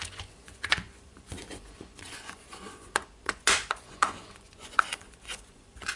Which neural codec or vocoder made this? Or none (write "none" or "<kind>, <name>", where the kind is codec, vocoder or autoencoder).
vocoder, Vocos